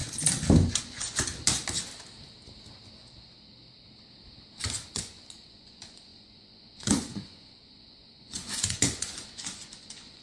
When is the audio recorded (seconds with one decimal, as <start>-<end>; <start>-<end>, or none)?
0.0-0.8; 1.3-4.9